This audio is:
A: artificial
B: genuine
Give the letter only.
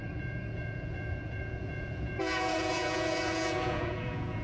A